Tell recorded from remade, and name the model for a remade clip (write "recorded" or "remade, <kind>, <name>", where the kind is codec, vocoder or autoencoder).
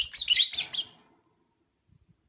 recorded